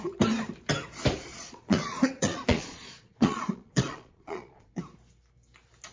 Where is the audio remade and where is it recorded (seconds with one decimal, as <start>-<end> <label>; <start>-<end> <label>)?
0.0-1.3 recorded; 1.3-4.8 remade; 4.8-5.9 recorded